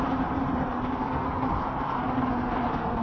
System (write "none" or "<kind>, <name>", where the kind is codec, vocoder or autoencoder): none